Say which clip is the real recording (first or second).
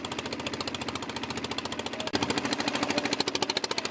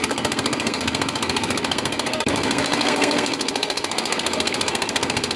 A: first